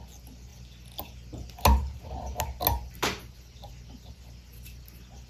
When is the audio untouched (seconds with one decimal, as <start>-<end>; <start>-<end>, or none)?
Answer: 0.0-5.3